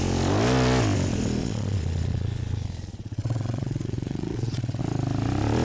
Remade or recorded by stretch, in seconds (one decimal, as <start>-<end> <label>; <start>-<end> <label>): 0.0-1.4 recorded; 1.4-4.8 remade; 4.8-5.6 recorded

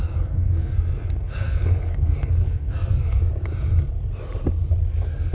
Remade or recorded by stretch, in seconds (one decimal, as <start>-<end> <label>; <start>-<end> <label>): 0.0-3.2 remade; 3.2-5.3 recorded

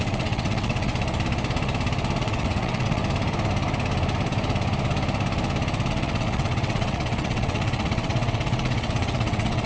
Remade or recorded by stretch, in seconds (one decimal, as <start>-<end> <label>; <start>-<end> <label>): 0.0-0.9 remade; 0.9-2.2 recorded; 2.2-3.0 remade; 3.0-5.9 recorded; 5.9-9.7 remade

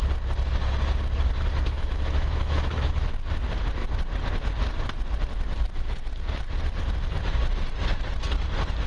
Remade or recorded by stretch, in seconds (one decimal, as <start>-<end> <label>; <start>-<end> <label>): 0.0-1.5 recorded; 1.5-3.1 remade; 3.1-8.9 recorded